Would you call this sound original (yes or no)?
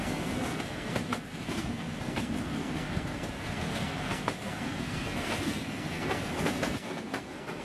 no